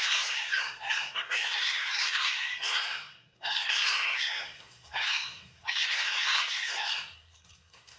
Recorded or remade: remade